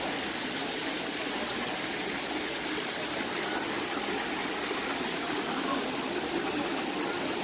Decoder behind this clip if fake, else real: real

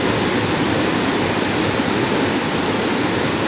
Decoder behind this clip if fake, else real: real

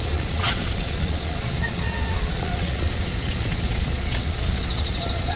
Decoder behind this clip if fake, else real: fake, vocoder, Vocos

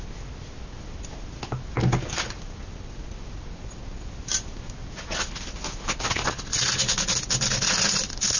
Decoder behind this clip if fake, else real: real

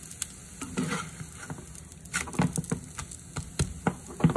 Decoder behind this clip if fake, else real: real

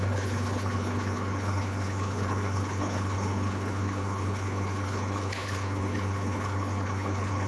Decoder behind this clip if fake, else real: fake, codec, HILCodec